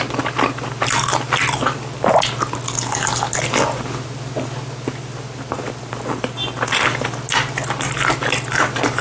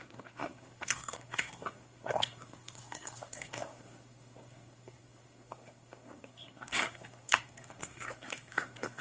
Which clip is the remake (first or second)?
second